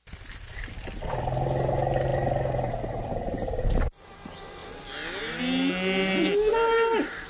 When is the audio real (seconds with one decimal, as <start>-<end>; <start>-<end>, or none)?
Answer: 0.0-7.3